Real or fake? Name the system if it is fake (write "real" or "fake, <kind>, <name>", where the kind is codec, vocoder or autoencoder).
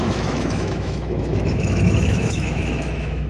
fake, autoencoder, DAC-VAE